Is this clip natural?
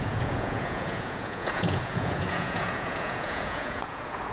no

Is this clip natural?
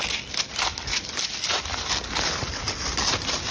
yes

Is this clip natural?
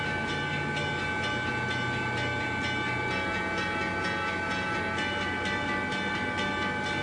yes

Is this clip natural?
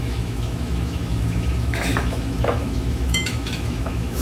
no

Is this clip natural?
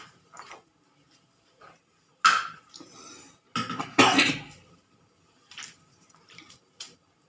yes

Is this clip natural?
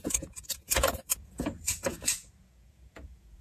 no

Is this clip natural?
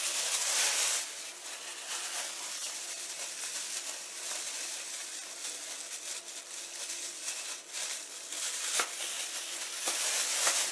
yes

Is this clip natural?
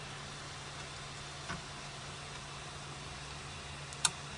yes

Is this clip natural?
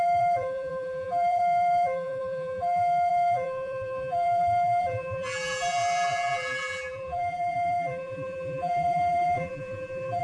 no